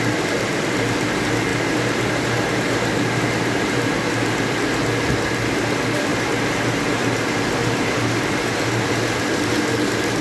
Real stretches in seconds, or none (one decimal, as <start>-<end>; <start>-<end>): 0.0-1.5; 3.9-6.1; 8.1-10.2